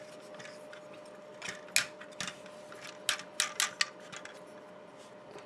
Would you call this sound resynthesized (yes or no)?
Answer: no